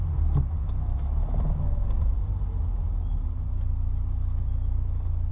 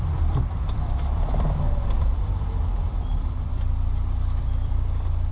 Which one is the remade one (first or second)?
second